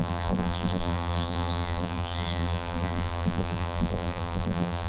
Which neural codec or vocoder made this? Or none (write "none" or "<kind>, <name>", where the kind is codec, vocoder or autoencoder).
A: vocoder, BigVGAN v2